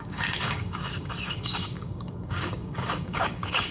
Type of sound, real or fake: fake